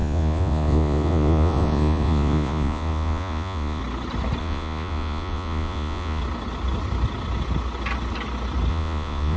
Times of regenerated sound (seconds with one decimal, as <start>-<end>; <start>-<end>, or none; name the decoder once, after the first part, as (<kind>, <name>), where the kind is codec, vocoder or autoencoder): 0.0-3.8 (vocoder, Vocos); 4.4-6.2; 8.7-9.4